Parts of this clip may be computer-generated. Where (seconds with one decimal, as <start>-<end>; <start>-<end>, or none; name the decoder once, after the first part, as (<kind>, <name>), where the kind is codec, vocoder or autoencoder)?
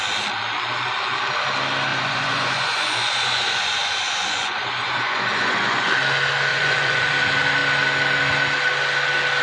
1.9-5.9 (vocoder, Vocos); 6.5-7.1